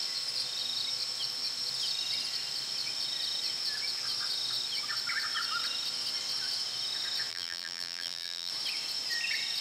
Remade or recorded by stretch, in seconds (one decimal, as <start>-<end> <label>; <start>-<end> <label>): 0.0-7.3 recorded; 7.3-8.5 remade; 8.5-9.6 recorded